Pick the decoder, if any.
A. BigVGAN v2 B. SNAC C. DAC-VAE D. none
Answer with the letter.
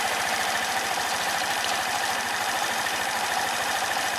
A